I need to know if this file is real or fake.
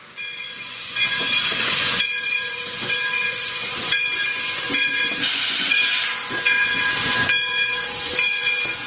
fake